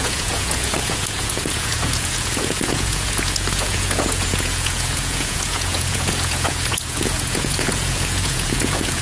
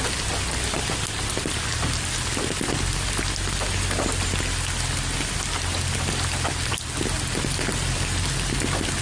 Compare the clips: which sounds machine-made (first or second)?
first